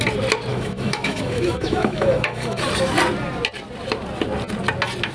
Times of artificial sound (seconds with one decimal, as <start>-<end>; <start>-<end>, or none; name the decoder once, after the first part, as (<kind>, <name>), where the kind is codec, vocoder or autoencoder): 0.5-2.6 (autoencoder, DAC-VAE)